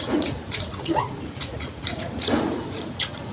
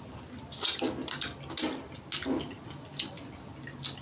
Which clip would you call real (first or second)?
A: second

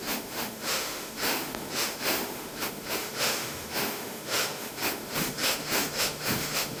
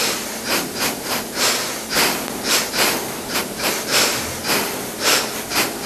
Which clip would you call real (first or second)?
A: second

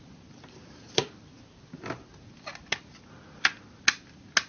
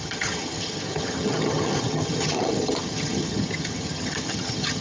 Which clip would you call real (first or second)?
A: first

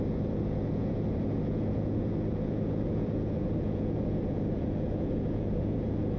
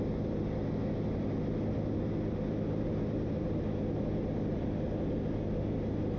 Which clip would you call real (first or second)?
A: second